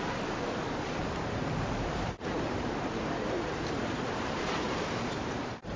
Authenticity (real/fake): fake